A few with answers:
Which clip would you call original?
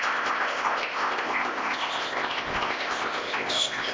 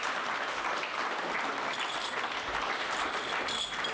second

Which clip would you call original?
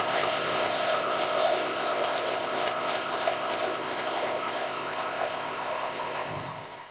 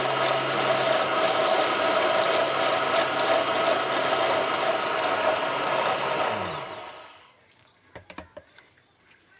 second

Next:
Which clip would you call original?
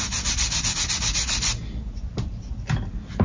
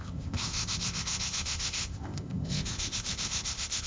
first